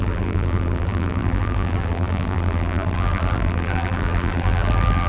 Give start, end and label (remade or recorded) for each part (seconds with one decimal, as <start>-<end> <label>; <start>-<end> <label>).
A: 0.0-5.1 remade

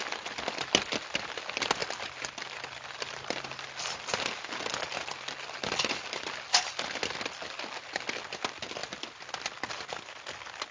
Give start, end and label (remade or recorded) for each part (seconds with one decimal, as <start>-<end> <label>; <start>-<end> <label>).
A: 0.0-1.8 recorded; 1.8-3.8 remade; 3.8-10.7 recorded

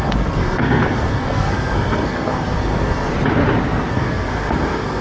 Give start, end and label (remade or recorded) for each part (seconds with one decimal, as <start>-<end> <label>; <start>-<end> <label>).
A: 0.0-3.1 remade; 3.1-3.9 recorded; 3.9-5.0 remade